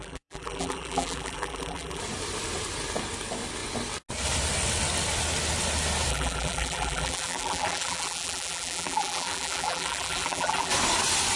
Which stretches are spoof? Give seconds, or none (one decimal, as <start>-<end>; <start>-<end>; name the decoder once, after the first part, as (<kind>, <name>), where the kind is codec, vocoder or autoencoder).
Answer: 0.0-2.0 (vocoder, BigVGAN v2); 6.1-10.7